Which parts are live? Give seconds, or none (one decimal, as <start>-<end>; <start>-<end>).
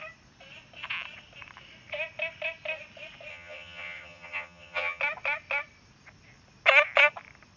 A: 0.0-3.3; 5.0-7.6